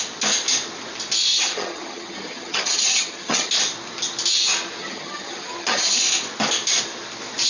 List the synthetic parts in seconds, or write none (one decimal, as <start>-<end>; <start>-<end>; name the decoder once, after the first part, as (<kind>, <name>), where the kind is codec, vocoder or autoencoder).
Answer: 1.3-3.5 (vocoder, HiFi-GAN); 4.8-6.0